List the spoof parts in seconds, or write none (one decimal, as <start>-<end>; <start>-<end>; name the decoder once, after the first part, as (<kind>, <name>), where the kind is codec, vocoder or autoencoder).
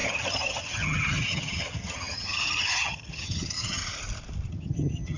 0.0-3.8 (vocoder, HiFi-GAN); 4.5-5.2